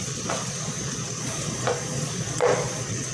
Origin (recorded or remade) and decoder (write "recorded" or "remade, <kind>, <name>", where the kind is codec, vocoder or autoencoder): remade, vocoder, Vocos